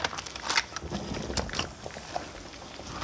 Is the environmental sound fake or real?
real